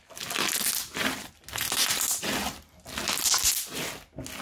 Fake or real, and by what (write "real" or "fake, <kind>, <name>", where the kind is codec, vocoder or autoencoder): real